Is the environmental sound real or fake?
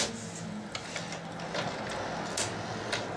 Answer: real